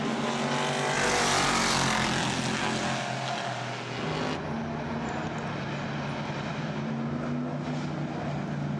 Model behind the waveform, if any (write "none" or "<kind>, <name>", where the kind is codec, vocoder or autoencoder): none